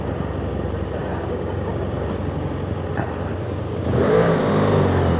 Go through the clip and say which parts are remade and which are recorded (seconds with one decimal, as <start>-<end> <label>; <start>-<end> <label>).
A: 0.0-1.0 recorded; 1.0-1.7 remade; 1.7-3.4 recorded; 3.4-4.5 remade; 4.5-5.2 recorded